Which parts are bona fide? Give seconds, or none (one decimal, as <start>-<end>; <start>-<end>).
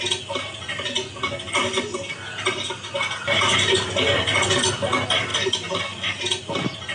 0.0-6.9